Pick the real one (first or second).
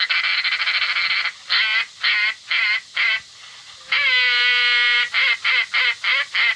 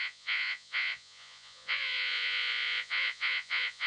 first